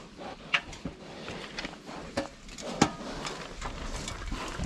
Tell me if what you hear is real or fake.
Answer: real